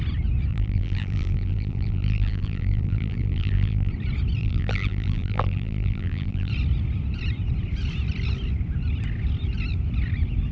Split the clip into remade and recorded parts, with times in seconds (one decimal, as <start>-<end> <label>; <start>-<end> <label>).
0.0-0.5 recorded; 0.5-3.9 remade; 3.9-4.4 recorded; 4.4-6.5 remade; 6.5-10.5 recorded